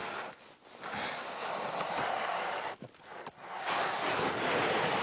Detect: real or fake real